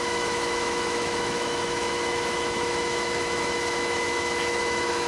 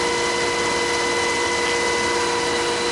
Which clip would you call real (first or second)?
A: second